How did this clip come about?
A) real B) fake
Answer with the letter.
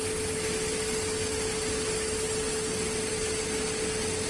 A